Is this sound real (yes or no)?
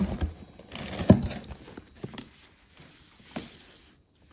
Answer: yes